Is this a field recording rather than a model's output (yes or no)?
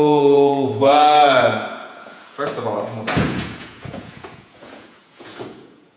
no